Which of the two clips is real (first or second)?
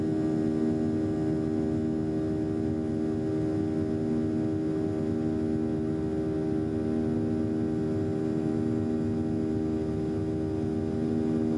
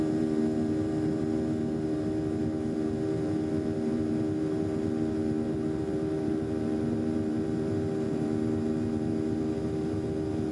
first